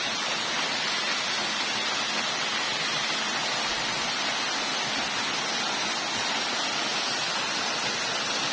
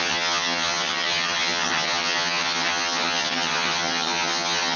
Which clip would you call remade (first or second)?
second